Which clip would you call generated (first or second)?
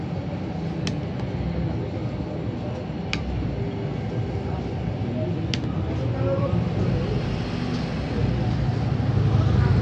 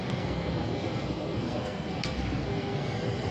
second